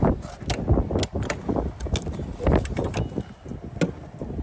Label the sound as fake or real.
real